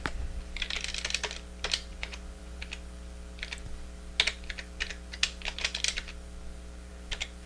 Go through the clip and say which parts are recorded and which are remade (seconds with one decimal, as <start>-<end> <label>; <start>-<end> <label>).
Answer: 0.0-1.9 recorded; 1.9-2.6 remade; 2.6-7.5 recorded